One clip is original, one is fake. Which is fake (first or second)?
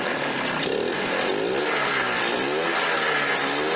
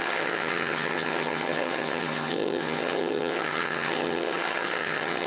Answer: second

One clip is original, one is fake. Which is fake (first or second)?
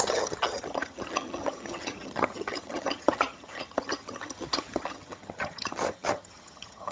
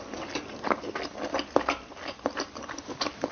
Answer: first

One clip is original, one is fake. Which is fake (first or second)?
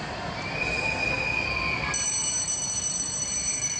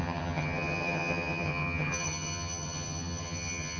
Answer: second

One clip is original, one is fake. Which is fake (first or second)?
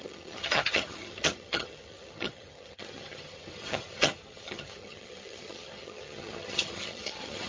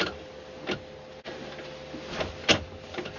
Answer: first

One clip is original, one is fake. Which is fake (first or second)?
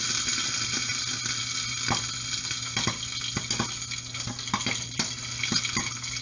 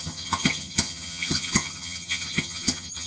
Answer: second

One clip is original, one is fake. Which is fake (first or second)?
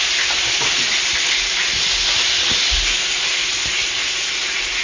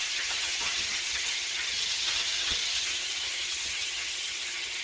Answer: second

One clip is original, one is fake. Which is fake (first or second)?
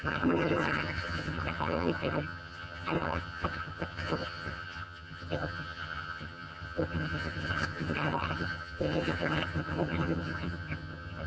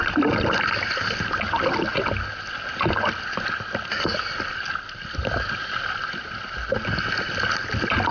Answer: first